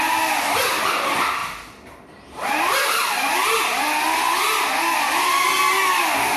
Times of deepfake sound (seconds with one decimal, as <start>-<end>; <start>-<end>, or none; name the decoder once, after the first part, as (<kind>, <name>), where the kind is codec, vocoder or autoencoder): none